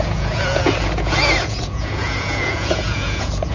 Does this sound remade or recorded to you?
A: remade